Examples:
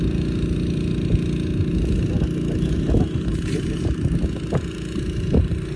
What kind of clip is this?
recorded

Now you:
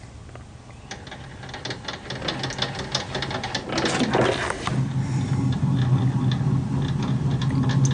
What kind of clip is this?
recorded